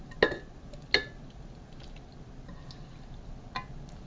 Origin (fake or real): real